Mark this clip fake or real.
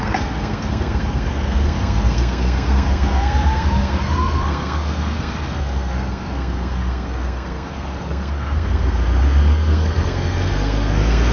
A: fake